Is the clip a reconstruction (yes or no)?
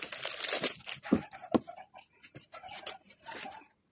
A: no